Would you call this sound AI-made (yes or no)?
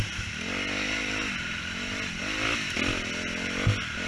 no